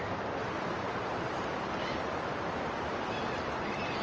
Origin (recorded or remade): remade